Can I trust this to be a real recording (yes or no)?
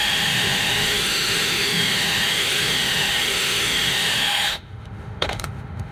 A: no